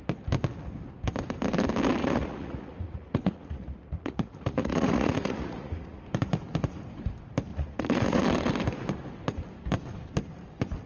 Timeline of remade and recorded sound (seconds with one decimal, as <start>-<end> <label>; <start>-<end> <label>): 0.0-2.0 recorded; 2.0-6.0 remade; 6.0-7.5 recorded; 7.5-8.2 remade; 8.2-10.9 recorded